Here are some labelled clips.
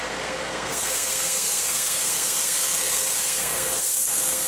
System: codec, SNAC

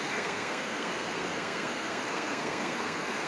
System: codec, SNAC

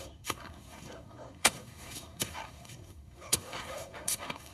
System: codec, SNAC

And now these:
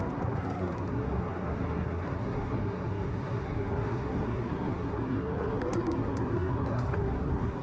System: codec, SNAC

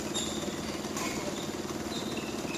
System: none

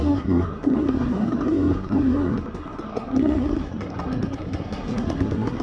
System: codec, SNAC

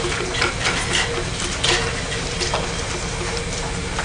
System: none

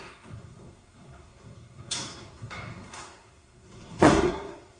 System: codec, SNAC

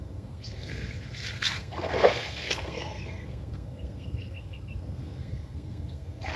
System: codec, SNAC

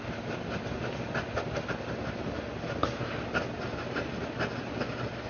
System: none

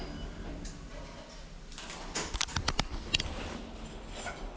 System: none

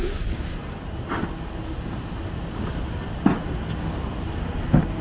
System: none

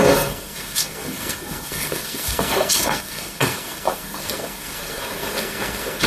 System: codec, SNAC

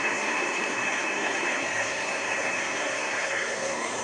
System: codec, SNAC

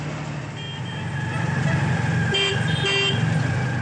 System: none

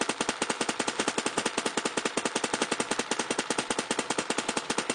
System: none